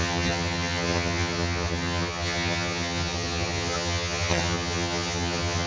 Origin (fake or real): fake